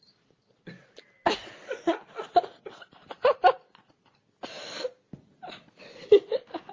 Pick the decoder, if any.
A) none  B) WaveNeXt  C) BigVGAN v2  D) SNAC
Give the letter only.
A